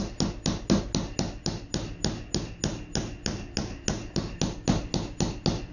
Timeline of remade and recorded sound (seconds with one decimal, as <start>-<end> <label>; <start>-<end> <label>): 0.0-5.7 recorded